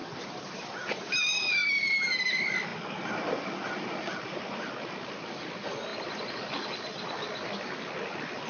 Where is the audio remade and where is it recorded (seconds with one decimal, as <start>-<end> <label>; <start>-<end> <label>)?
0.0-8.5 recorded